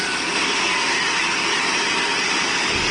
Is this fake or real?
real